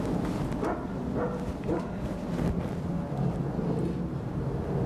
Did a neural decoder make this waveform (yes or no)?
no